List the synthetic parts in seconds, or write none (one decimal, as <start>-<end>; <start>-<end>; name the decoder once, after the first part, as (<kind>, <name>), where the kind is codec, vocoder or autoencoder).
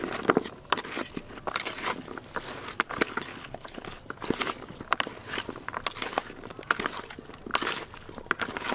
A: 3.3-4.0 (codec, HILCodec)